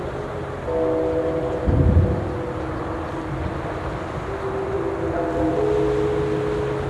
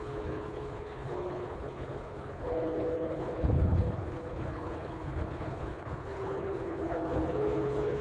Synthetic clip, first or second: second